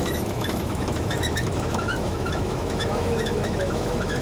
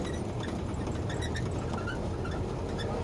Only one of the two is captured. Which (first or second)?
second